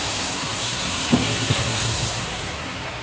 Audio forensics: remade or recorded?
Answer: remade